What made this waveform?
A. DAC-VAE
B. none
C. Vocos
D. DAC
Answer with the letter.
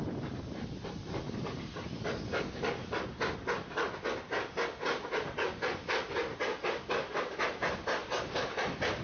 B